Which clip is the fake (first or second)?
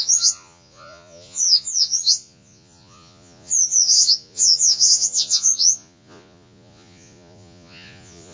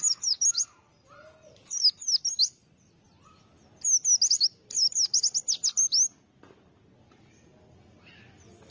first